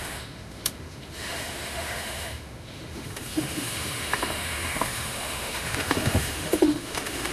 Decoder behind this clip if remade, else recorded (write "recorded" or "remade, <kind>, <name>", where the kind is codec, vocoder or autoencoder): remade, autoencoder, DAC-VAE